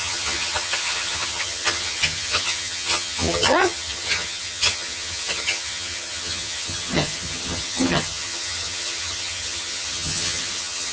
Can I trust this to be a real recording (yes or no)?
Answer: no